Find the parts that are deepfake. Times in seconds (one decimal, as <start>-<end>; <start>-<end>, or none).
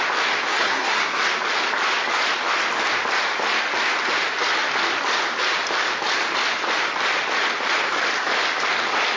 0.5-1.2